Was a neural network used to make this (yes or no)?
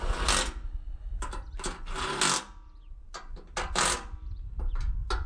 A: no